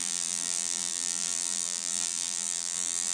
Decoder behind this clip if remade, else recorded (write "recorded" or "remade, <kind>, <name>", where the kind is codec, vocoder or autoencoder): remade, vocoder, BigVGAN v2